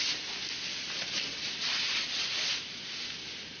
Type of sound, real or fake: real